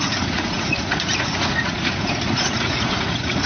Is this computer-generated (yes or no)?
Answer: yes